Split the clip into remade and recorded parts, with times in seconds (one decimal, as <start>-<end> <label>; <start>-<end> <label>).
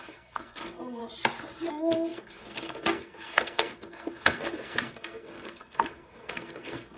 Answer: 0.0-1.0 remade; 1.0-1.7 recorded; 1.7-7.0 remade